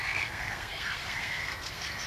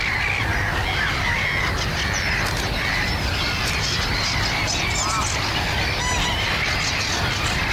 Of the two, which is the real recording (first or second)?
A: second